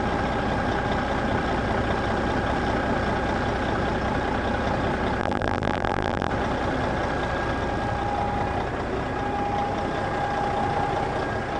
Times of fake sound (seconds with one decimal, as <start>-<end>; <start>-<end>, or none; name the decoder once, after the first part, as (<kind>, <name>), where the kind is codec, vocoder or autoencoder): 5.2-6.3 (vocoder, BigVGAN v2)